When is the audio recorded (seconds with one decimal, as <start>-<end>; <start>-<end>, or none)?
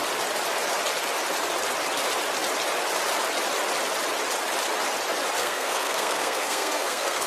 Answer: 0.0-5.4